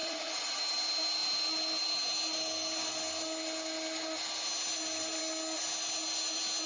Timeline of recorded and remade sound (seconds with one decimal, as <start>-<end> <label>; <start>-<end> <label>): 0.0-0.6 remade; 0.6-6.7 recorded